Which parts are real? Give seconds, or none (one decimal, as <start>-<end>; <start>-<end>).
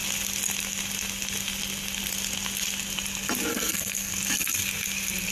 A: 0.0-3.5; 4.1-5.3